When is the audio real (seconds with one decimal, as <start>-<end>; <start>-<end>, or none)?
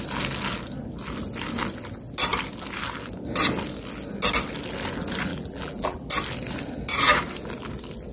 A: 0.0-5.3; 6.1-8.1